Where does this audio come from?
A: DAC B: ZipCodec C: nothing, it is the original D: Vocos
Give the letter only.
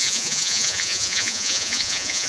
D